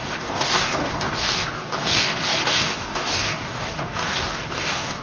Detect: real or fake fake